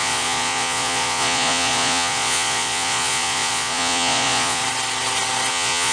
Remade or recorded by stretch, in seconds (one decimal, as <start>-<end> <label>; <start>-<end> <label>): 0.0-4.6 remade; 4.6-5.5 recorded; 5.5-5.9 remade